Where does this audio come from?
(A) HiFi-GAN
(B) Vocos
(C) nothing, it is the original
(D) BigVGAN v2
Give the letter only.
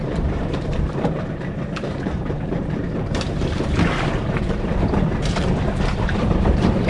D